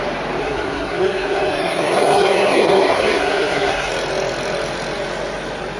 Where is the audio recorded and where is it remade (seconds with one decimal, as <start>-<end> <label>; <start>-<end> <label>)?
0.0-0.4 recorded; 0.4-3.9 remade; 3.9-5.8 recorded